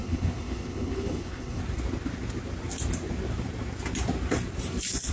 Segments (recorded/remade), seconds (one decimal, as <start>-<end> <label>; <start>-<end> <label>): 0.0-1.6 remade; 1.6-5.1 recorded